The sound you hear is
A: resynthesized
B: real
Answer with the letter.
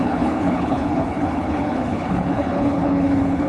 A